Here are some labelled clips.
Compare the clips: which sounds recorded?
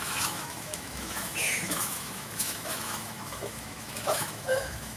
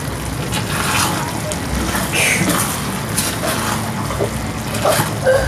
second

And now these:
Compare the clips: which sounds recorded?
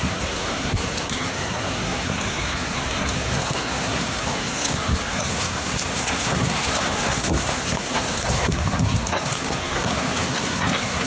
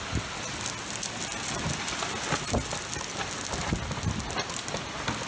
second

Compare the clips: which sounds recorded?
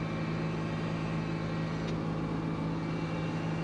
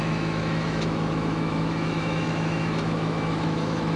first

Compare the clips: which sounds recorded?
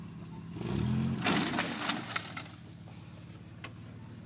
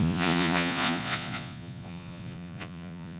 first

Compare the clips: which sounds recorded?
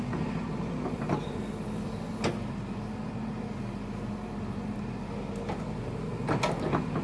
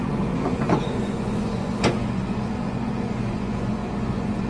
first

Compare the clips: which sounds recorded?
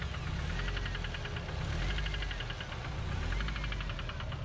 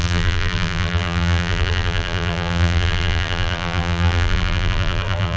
first